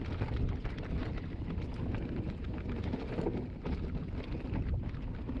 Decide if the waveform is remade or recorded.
recorded